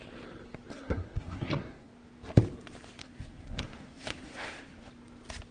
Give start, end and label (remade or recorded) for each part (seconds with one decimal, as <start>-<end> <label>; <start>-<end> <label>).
0.0-0.7 recorded; 0.7-1.9 remade; 1.9-3.0 recorded; 3.0-4.9 remade; 4.9-5.5 recorded